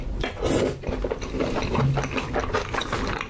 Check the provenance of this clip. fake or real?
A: real